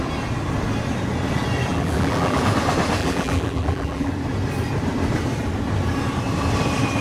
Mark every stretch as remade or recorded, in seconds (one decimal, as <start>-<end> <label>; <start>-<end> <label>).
0.0-1.7 recorded; 1.7-2.4 remade; 2.4-3.0 recorded; 3.0-4.1 remade; 4.1-7.0 recorded

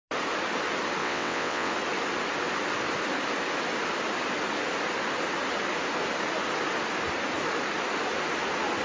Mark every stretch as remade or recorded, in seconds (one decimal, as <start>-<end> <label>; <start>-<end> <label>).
0.0-1.0 recorded; 1.0-1.7 remade; 1.7-8.8 recorded

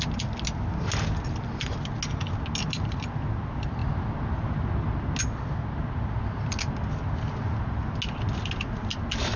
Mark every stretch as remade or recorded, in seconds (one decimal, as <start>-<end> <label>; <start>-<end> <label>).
0.0-9.4 recorded

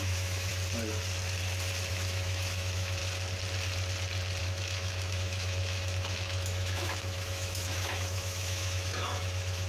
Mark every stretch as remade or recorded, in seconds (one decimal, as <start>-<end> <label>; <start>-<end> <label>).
0.0-0.5 remade; 0.5-1.9 recorded; 1.9-3.0 remade; 3.0-4.4 recorded; 4.4-9.7 remade

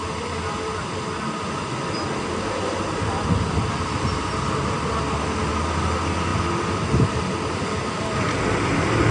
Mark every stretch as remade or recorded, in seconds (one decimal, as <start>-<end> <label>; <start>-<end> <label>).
0.0-9.1 recorded

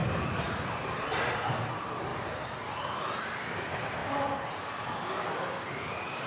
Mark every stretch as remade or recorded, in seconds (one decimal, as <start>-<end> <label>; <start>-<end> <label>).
0.0-6.3 recorded

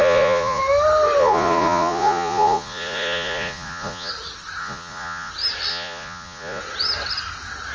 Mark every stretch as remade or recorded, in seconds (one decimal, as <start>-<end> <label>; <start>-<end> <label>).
0.0-0.6 remade; 0.6-1.2 recorded; 1.2-4.1 remade; 4.1-4.6 recorded; 4.6-5.3 remade; 5.3-5.7 recorded; 5.7-6.6 remade; 6.6-7.7 recorded

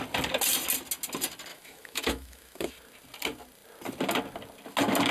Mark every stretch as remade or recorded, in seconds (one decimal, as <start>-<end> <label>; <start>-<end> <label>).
0.0-1.5 recorded; 1.5-2.7 remade; 2.7-5.1 recorded